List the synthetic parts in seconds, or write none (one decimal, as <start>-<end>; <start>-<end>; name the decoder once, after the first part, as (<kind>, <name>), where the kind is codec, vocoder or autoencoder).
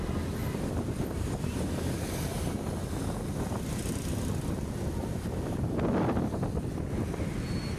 0.4-1.8 (vocoder, BigVGAN v2)